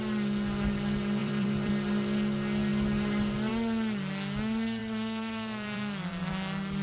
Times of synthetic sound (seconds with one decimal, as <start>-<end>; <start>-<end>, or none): 1.2-1.7; 4.8-6.3